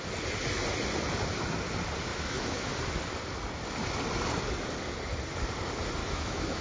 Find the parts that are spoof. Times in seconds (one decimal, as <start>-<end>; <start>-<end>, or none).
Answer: 2.1-2.7; 6.0-6.6